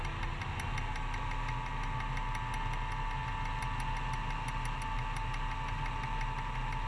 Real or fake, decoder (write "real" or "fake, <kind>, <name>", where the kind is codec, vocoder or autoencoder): real